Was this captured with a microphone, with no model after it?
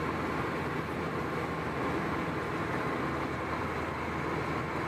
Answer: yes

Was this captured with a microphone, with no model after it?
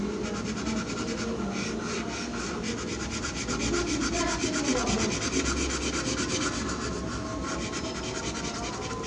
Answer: yes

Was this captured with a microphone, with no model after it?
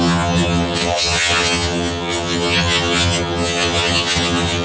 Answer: no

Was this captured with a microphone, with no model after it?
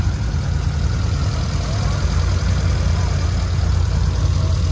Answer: yes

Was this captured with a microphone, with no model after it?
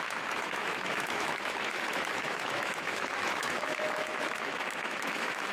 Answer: no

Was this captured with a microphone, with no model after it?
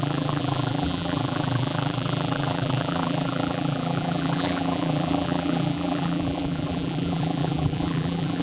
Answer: no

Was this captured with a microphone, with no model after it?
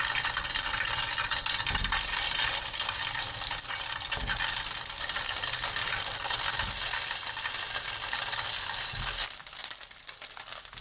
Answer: yes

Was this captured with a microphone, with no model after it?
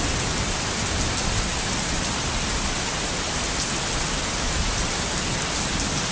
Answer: yes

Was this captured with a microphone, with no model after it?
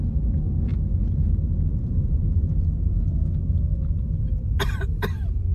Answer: yes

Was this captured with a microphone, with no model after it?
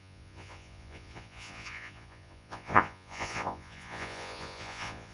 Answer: no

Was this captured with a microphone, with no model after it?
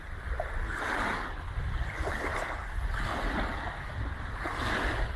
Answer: yes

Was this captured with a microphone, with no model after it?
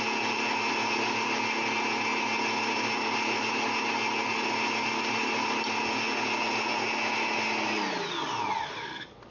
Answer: yes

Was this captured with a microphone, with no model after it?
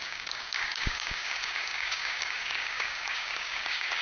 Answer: no